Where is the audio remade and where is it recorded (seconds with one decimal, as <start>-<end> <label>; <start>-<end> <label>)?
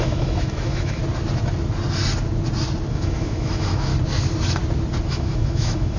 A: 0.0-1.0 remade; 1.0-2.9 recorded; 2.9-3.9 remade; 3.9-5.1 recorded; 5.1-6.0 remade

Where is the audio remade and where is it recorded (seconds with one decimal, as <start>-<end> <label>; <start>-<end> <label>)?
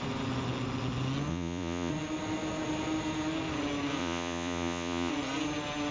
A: 0.0-1.3 recorded; 1.3-1.9 remade; 1.9-4.0 recorded; 4.0-5.1 remade; 5.1-5.9 recorded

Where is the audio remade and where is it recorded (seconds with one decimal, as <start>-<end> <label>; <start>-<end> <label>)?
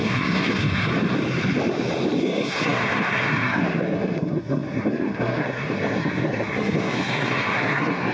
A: 0.0-0.9 remade; 0.9-2.2 recorded; 2.2-8.1 remade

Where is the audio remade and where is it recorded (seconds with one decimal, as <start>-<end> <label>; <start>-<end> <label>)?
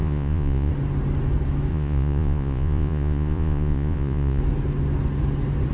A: 0.0-0.7 remade; 0.7-1.7 recorded; 1.7-4.4 remade; 4.4-5.7 recorded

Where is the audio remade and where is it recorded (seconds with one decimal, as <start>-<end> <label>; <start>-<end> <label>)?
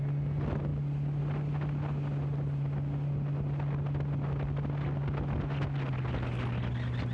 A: 0.0-7.1 recorded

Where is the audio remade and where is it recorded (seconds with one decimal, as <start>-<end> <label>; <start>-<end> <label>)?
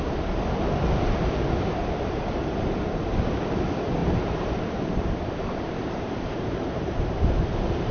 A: 0.0-4.0 recorded; 4.0-7.9 remade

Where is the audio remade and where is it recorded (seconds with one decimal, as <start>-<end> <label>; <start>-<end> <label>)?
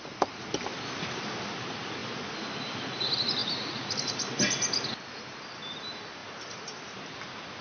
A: 0.0-7.6 recorded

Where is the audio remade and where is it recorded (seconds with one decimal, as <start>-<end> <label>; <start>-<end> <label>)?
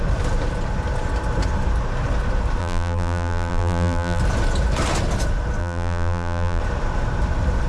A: 0.0-2.6 recorded; 2.6-4.2 remade; 4.2-5.6 recorded; 5.6-6.6 remade; 6.6-7.7 recorded